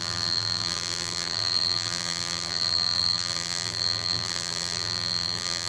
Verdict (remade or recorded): remade